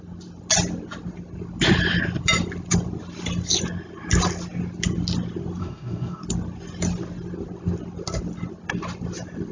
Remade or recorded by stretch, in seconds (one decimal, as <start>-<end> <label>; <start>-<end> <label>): 0.0-5.6 recorded; 5.6-6.2 remade; 6.2-9.5 recorded